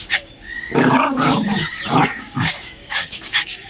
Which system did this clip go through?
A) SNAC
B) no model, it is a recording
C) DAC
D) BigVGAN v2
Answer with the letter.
C